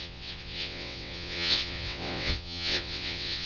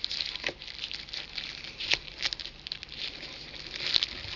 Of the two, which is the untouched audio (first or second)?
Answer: second